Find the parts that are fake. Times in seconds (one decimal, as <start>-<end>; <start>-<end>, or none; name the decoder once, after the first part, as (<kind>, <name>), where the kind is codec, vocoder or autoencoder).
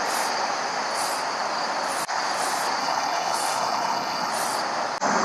2.8-4.3 (codec, HILCodec)